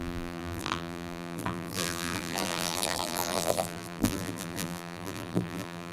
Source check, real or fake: fake